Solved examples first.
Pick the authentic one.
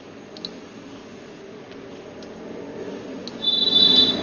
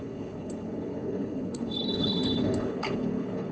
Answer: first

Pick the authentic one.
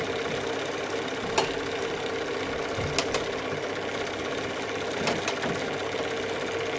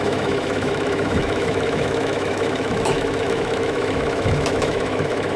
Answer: first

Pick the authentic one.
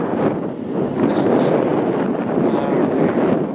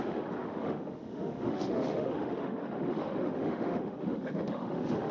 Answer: first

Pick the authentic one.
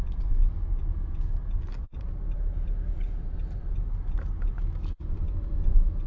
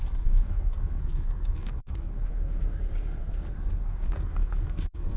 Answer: first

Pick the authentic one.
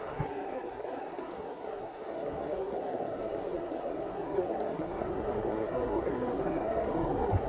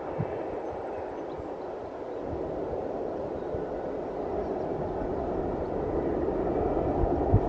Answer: second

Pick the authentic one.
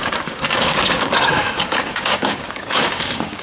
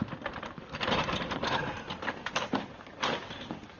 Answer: second